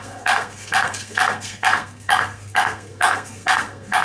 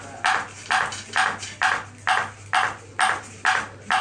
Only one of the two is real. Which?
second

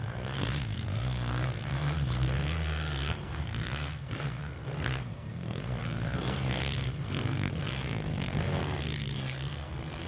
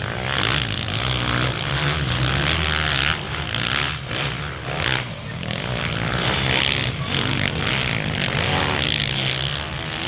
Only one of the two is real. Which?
second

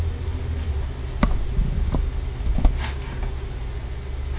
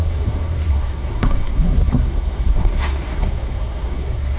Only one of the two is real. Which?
first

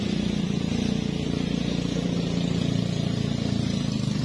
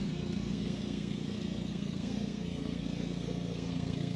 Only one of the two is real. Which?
first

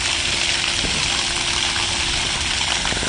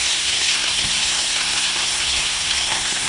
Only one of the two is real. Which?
first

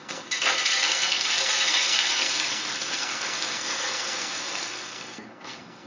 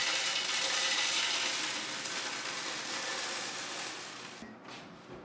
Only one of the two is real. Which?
second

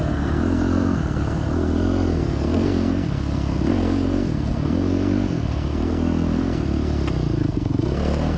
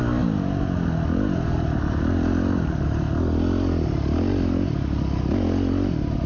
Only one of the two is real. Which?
second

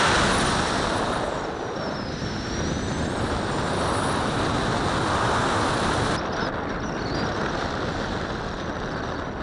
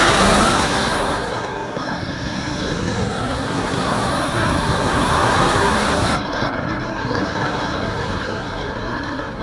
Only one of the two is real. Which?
first